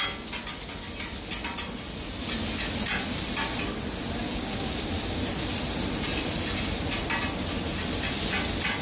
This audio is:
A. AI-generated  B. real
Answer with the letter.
B